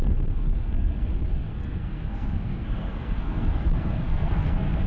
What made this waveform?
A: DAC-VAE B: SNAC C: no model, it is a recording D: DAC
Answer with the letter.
B